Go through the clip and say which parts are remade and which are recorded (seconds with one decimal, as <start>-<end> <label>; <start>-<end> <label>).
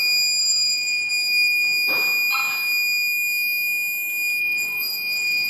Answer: 0.0-0.4 recorded; 0.4-1.1 remade; 1.1-4.4 recorded; 4.4-5.5 remade